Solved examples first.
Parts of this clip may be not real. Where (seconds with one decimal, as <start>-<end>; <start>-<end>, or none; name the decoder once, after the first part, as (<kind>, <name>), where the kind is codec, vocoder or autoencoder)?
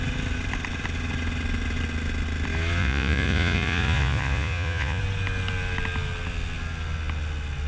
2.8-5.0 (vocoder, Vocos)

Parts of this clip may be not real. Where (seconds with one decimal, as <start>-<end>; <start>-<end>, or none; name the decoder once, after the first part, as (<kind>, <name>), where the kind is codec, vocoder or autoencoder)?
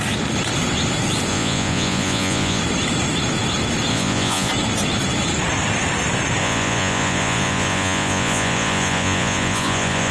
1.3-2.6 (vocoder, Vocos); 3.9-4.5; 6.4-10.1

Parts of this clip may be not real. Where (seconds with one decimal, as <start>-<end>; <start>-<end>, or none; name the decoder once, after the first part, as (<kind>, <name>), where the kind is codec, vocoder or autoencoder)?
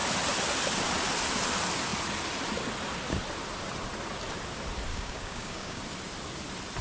4.9-5.8 (codec, DAC)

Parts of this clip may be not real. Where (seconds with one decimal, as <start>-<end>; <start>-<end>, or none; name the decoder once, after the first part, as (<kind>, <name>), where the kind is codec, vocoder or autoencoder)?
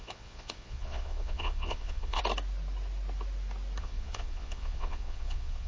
0.0-2.2 (vocoder, Vocos); 3.8-5.7